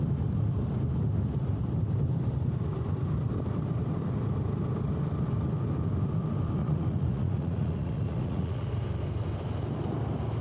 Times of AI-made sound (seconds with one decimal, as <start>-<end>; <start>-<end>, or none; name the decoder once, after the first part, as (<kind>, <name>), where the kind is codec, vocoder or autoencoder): 6.6-8.7 (vocoder, Vocos)